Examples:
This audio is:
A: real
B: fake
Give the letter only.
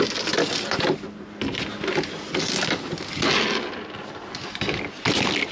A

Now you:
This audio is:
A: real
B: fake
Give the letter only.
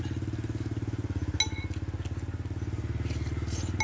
A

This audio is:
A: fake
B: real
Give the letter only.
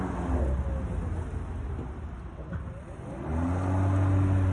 B